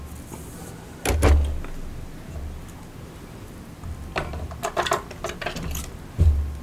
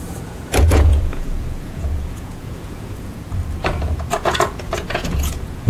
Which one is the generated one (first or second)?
second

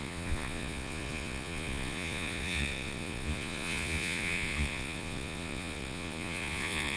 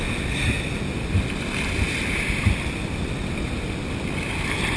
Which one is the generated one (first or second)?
first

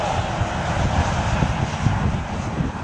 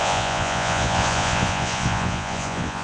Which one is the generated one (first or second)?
second